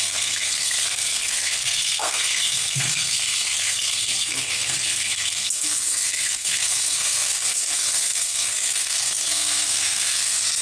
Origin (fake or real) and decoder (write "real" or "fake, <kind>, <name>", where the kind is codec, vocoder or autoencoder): fake, codec, SNAC